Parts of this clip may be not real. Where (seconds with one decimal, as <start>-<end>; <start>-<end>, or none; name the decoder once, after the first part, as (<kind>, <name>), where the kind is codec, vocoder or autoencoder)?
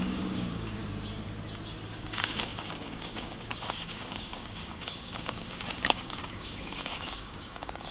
0.0-0.8 (codec, DAC); 1.9-7.9